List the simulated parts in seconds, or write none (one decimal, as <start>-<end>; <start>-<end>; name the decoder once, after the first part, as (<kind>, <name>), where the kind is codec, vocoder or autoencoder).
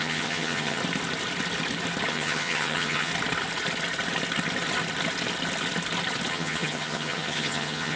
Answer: 0.0-0.8 (vocoder, HiFi-GAN); 2.1-3.1; 6.3-8.0